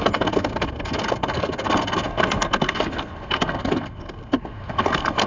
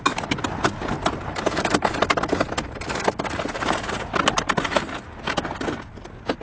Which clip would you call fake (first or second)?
first